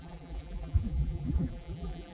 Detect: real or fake fake